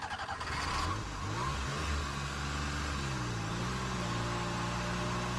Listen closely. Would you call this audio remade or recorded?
recorded